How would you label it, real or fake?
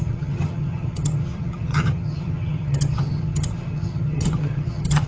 fake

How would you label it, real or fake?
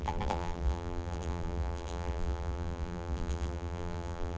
fake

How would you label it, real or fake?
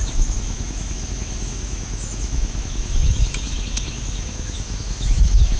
fake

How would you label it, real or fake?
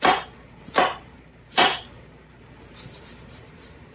fake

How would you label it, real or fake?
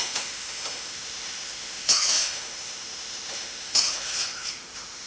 fake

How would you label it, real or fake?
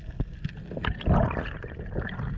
real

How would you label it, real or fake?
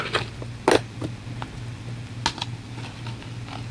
real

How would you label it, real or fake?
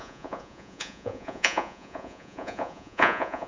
fake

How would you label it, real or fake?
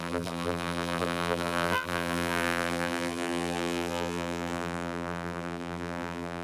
fake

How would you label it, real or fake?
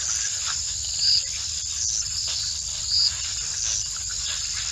real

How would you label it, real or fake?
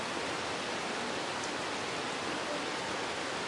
real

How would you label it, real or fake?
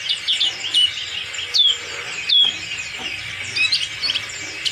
real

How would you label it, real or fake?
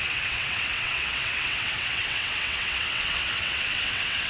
fake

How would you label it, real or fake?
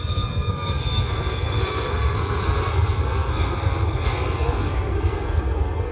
fake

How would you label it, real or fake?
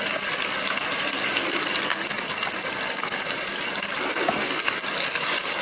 real